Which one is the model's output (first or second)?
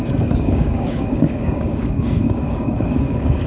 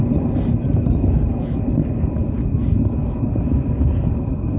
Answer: first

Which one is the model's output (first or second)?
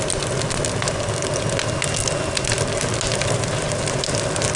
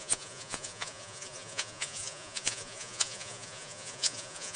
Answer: second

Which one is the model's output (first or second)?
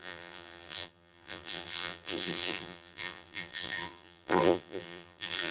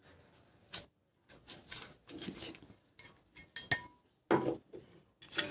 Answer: first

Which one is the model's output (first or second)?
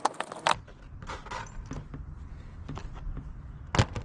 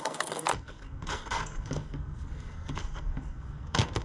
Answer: second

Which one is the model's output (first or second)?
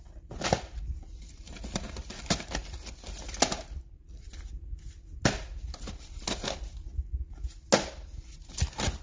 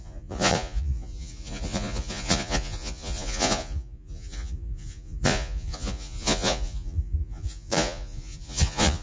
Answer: second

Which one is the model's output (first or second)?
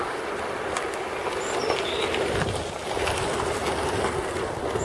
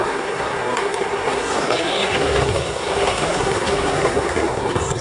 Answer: second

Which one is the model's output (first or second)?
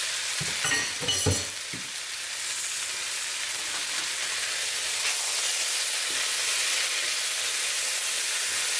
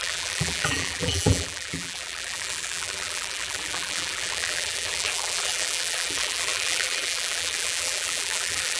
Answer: second